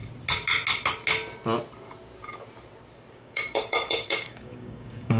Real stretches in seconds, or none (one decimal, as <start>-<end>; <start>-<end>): 0.0-3.1